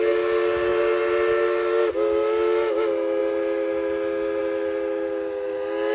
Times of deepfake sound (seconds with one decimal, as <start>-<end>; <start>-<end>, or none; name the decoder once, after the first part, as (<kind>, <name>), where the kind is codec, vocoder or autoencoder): none